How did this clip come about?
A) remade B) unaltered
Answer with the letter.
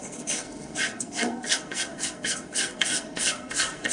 A